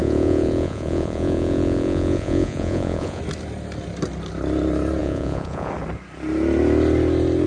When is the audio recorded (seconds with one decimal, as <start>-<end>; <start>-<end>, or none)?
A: 3.2-5.0; 5.7-7.5